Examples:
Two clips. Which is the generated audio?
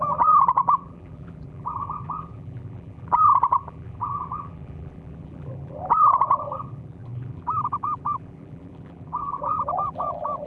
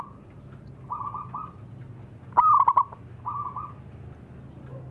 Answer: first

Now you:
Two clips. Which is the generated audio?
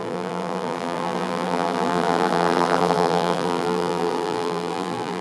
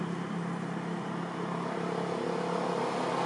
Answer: first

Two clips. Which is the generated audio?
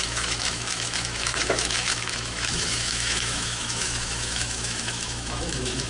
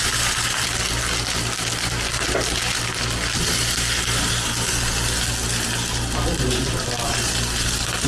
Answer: first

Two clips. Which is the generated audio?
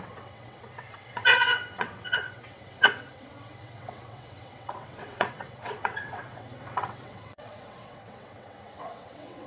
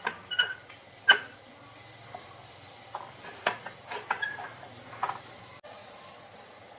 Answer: first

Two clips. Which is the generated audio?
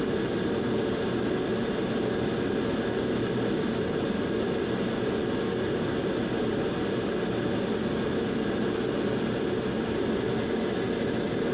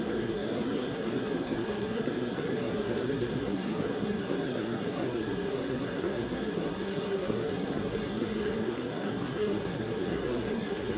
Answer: second